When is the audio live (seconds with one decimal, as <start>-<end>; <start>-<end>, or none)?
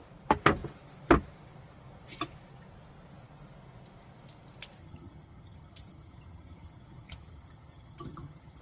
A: 0.0-4.8